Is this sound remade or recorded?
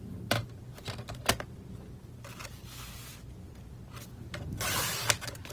recorded